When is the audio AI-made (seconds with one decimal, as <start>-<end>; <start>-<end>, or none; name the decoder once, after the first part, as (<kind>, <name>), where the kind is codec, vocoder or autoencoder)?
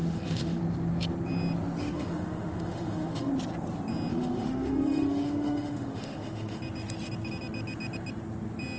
0.0-0.6 (autoencoder, DAC-VAE); 1.8-3.3; 4.1-6.6